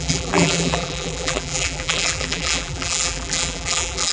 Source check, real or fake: fake